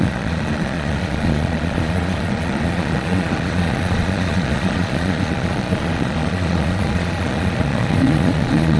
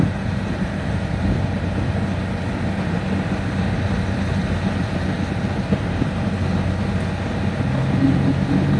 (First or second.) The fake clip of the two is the first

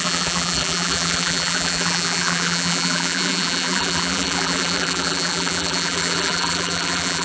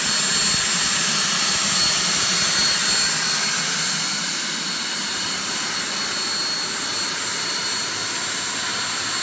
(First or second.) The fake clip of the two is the first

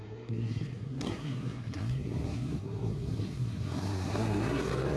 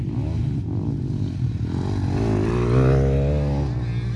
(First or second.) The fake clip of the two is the first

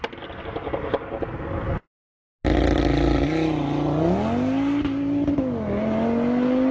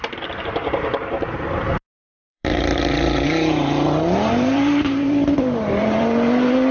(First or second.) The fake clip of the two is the second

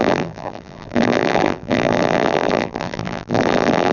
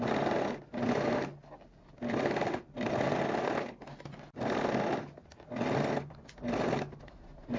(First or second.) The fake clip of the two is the first